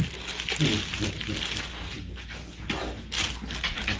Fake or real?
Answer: real